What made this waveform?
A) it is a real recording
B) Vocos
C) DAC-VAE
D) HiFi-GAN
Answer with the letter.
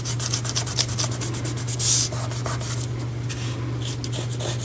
A